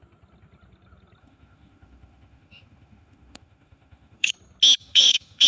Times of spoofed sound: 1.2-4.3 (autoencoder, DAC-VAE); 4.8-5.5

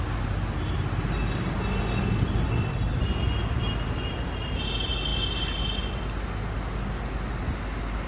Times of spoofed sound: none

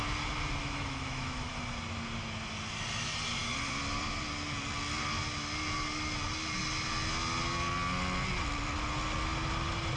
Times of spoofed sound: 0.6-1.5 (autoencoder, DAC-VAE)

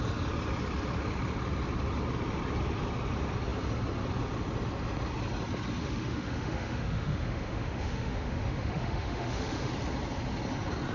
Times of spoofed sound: 5.8-9.7 (autoencoder, DAC-VAE)